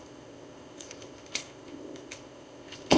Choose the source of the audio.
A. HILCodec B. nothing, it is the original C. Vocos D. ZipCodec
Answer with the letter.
D